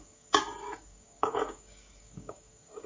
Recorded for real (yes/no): no